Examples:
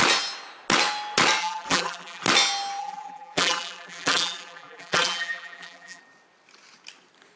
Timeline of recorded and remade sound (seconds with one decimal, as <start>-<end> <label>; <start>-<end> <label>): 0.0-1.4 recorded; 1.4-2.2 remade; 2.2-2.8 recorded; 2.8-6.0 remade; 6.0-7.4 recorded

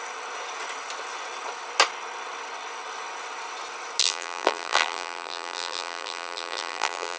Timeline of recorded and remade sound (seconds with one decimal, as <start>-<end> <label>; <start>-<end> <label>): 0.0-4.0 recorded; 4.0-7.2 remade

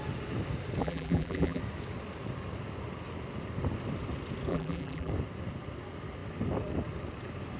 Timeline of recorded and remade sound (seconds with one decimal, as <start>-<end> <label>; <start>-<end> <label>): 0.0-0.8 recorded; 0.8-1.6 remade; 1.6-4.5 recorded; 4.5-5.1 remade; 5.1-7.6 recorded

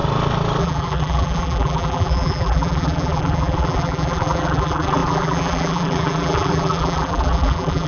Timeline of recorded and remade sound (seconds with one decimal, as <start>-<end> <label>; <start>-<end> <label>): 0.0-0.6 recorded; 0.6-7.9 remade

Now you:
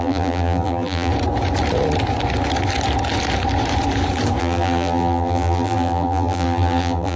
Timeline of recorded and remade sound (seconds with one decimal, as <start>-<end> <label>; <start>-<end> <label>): 0.0-1.1 remade; 1.1-4.4 recorded; 4.4-7.2 remade

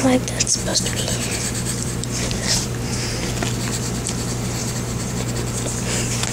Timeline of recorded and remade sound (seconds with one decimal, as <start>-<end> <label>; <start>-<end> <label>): 0.0-0.7 recorded; 0.7-3.3 remade; 3.3-4.6 recorded; 4.6-5.1 remade; 5.1-6.3 recorded